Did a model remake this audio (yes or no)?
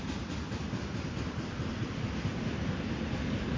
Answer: no